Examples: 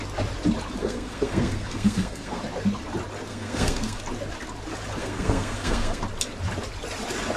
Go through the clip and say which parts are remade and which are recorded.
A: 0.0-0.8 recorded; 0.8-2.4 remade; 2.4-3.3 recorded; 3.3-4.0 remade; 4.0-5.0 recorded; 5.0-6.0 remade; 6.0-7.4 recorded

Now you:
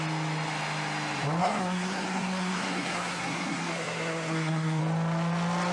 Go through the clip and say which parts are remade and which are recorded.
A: 0.0-1.4 recorded; 1.4-4.8 remade; 4.8-5.7 recorded

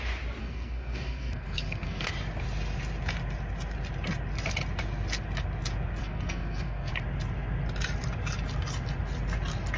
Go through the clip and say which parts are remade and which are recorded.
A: 0.0-0.4 recorded; 0.4-2.1 remade; 2.1-6.0 recorded; 6.0-6.9 remade; 6.9-9.8 recorded

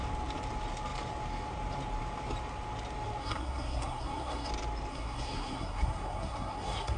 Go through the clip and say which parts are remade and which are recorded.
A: 0.0-3.2 recorded; 3.2-4.5 remade; 4.5-4.9 recorded; 4.9-7.0 remade